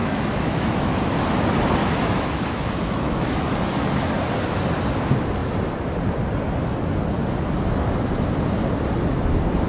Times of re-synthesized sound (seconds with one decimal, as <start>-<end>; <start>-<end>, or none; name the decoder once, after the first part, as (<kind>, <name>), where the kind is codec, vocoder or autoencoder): 0.0-1.0 (autoencoder, DAC-VAE); 1.8-3.9